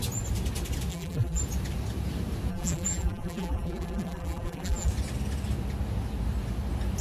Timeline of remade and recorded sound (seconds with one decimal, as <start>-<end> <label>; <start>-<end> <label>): 0.0-0.9 recorded; 0.9-1.4 remade; 1.4-2.5 recorded; 2.5-4.9 remade; 4.9-7.0 recorded